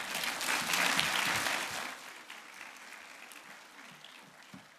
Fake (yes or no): no